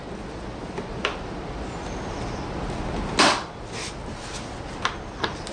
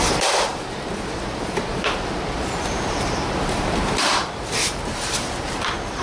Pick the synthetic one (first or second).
second